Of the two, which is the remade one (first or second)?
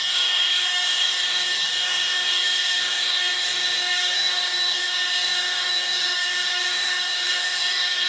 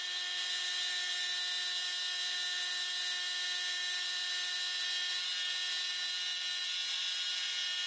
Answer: first